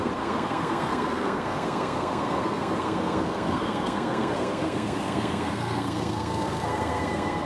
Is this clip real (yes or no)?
no